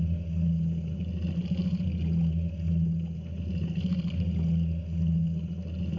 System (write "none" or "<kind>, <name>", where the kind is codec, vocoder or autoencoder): none